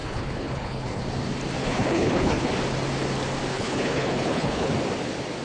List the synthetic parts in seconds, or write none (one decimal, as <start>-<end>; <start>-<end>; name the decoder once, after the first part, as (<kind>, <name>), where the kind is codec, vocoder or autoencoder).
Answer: 0.0-1.0 (codec, HILCodec); 1.6-2.5; 3.5-4.7